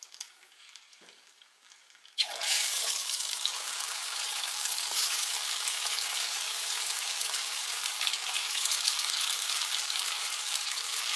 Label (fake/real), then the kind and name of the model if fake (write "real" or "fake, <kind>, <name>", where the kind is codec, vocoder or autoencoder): fake, codec, DAC